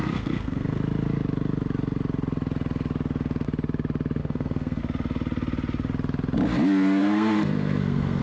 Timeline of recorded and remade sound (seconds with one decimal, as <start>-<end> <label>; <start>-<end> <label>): 0.0-0.8 remade; 0.8-4.2 recorded; 4.2-4.8 remade; 4.8-7.0 recorded; 7.0-8.2 remade